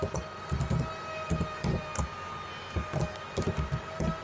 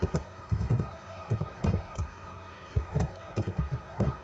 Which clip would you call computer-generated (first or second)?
second